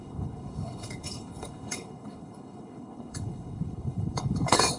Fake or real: fake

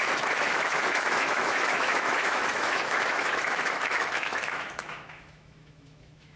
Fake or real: fake